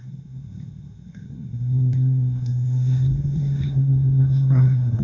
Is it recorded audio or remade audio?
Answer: remade